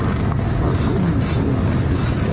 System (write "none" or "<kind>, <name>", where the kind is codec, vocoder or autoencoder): none